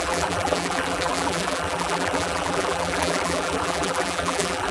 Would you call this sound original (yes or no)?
no